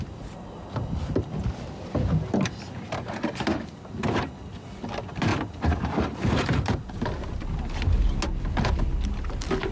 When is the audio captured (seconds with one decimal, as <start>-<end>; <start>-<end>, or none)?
0.0-5.3; 7.5-9.7